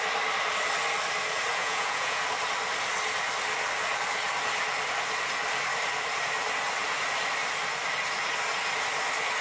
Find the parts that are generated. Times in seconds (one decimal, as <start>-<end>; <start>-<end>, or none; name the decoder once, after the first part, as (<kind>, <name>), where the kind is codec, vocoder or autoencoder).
1.5-2.2 (vocoder, Vocos)